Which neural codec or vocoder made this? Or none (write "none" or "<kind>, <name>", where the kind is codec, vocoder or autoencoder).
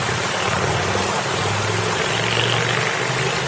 none